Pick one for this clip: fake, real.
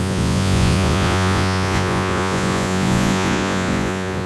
fake